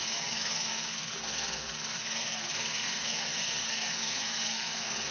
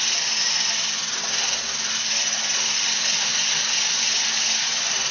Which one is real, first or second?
second